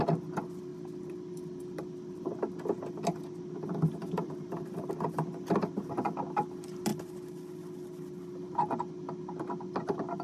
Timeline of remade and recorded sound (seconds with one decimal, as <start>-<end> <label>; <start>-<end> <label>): 0.0-4.0 recorded; 4.0-4.9 remade; 4.9-10.2 recorded